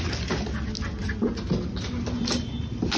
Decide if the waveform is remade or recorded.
recorded